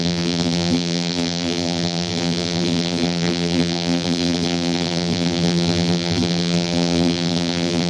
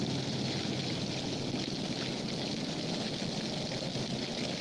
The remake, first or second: first